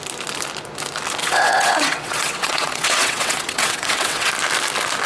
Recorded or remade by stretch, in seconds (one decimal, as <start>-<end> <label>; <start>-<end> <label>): 0.0-1.2 recorded; 1.2-4.3 remade; 4.3-5.1 recorded